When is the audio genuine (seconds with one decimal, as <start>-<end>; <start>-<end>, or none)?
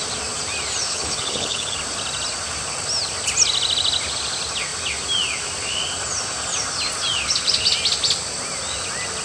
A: 0.0-0.9; 1.7-9.2